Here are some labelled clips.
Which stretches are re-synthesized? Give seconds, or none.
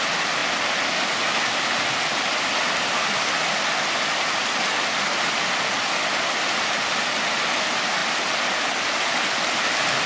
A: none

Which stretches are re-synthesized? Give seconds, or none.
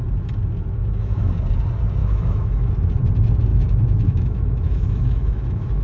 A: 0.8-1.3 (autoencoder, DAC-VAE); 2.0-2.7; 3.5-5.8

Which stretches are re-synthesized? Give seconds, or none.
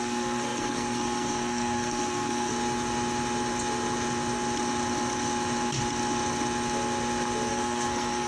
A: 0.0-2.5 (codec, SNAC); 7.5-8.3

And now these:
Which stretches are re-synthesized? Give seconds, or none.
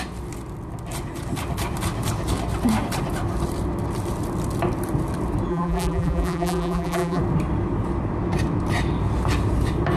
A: 5.5-7.2 (vocoder, BigVGAN v2)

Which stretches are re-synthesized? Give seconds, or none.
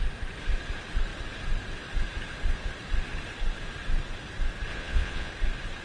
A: 4.7-5.3 (vocoder, Vocos)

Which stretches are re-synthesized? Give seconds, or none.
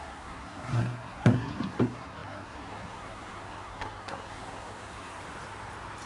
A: 0.0-5.2 (codec, SNAC)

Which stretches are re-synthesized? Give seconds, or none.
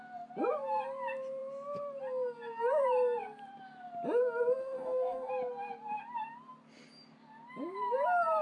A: 4.6-5.3 (codec, DAC)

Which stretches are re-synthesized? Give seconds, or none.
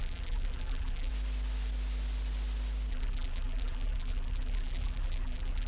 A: 0.0-1.1 (vocoder, BigVGAN v2); 2.9-5.7